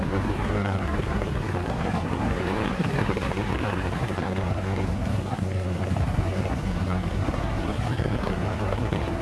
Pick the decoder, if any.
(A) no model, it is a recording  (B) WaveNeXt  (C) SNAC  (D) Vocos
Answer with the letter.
C